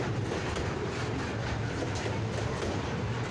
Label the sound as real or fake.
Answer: real